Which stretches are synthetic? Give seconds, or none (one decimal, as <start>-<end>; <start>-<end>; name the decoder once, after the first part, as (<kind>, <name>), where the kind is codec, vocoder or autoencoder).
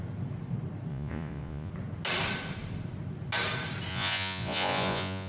0.9-1.7 (vocoder, Vocos); 3.9-5.3